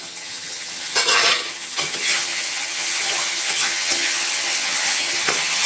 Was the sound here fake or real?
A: fake